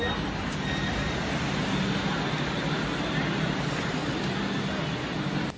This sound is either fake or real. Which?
real